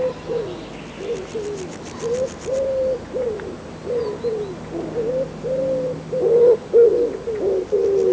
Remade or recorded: recorded